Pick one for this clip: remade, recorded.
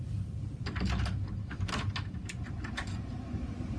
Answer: recorded